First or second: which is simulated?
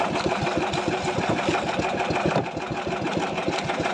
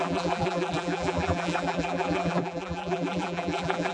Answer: second